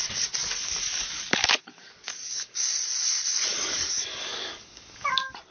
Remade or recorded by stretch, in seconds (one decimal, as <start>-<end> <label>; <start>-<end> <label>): 0.0-0.4 recorded; 0.4-2.6 remade; 2.6-3.5 recorded; 3.5-5.1 remade; 5.1-5.5 recorded